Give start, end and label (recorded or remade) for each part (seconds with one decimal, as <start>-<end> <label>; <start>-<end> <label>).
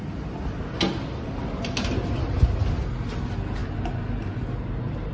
0.0-5.1 recorded